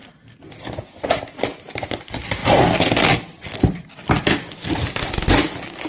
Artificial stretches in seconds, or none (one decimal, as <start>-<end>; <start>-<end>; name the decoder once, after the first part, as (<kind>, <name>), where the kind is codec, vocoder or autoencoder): none